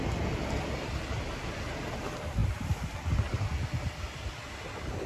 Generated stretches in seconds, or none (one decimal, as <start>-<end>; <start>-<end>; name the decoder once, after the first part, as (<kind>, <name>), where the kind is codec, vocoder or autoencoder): none